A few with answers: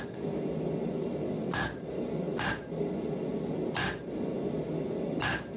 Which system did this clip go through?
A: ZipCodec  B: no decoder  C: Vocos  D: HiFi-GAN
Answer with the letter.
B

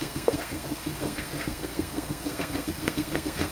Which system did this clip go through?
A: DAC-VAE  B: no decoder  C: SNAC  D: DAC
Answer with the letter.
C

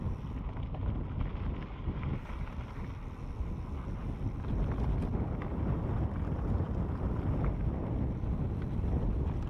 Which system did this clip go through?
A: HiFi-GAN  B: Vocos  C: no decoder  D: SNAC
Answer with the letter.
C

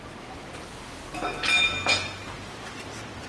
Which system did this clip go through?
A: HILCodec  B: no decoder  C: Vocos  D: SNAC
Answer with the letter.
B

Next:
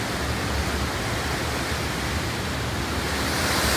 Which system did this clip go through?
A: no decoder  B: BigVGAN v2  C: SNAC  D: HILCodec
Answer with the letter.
A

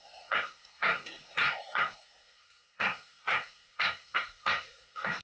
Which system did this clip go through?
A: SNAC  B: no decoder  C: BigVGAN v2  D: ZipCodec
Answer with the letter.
A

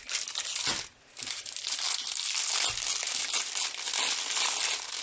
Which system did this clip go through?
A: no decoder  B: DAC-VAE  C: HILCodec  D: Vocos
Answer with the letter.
A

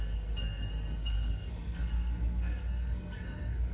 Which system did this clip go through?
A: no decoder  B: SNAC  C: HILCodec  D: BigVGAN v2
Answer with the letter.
B